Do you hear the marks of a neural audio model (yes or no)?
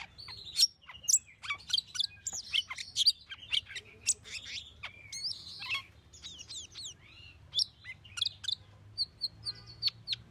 no